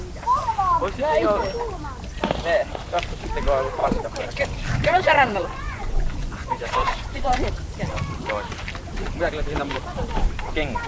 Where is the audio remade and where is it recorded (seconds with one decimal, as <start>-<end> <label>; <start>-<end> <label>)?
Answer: 0.0-3.8 recorded; 3.8-4.4 remade; 4.4-4.9 recorded; 4.9-7.3 remade; 7.3-10.9 recorded